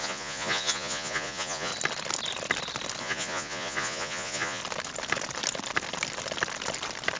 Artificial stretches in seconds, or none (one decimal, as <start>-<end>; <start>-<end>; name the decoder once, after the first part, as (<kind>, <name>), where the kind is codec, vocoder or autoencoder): 0.0-1.7 (vocoder, Vocos); 3.0-4.6